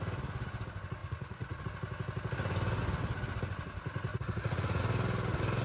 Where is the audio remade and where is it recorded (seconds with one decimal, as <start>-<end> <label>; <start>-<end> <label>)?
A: 0.0-1.0 recorded; 1.0-1.6 remade; 1.6-4.1 recorded; 4.1-4.8 remade; 4.8-5.6 recorded